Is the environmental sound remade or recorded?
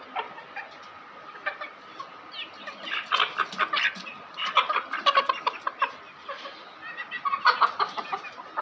recorded